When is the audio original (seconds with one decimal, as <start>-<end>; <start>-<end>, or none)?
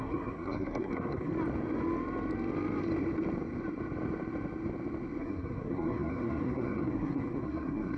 1.3-5.2